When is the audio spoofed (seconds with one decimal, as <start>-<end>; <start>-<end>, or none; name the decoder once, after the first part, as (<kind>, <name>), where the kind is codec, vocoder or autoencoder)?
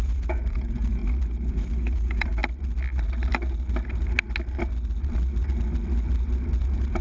0.0-1.0 (vocoder, Vocos); 1.5-2.4; 6.6-7.0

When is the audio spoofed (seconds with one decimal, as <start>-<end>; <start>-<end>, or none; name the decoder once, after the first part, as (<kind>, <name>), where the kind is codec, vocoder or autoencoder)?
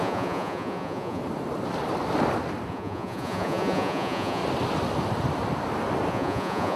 0.0-1.2 (vocoder, Vocos); 2.7-4.4; 6.1-6.8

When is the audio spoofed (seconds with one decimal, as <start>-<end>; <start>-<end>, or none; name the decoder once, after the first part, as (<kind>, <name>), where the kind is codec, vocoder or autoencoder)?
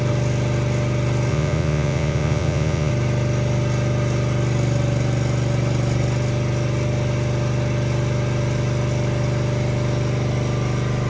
1.3-2.9 (vocoder, Vocos)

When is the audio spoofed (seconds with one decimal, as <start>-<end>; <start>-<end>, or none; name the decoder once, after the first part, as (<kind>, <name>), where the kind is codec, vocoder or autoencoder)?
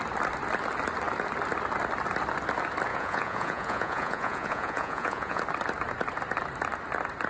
2.9-5.4 (vocoder, Vocos)